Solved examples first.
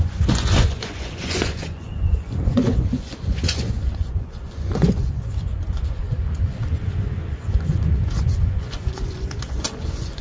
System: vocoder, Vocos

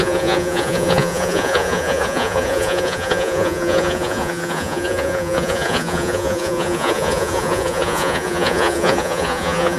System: vocoder, Vocos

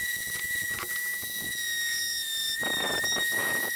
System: vocoder, Vocos